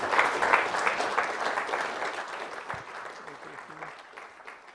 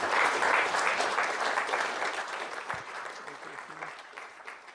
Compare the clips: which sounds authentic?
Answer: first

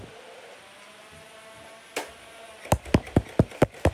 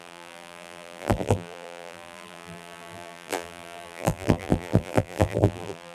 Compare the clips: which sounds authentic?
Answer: first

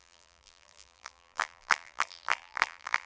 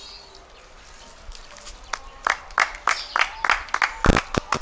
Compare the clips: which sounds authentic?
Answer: second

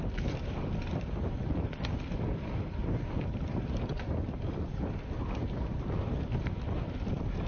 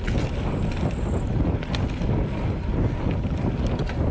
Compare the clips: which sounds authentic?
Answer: second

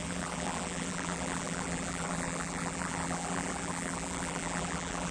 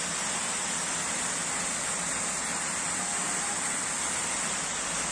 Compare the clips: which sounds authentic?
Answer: second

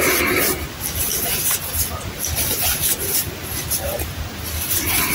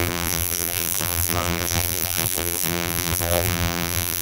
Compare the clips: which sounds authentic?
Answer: first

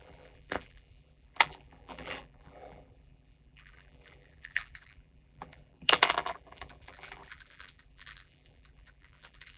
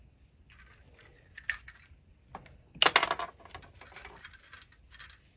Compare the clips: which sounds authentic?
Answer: second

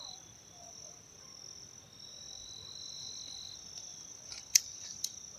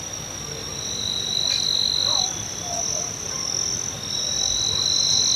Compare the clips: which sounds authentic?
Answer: second